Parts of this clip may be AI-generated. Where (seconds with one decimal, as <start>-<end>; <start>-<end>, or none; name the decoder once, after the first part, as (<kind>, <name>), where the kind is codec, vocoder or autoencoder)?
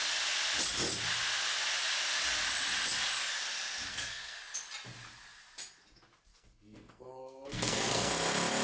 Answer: 3.9-4.4 (codec, SNAC); 6.3-8.1